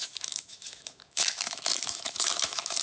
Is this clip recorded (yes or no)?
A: no